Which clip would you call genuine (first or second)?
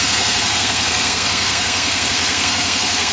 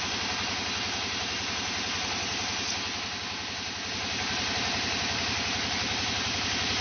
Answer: second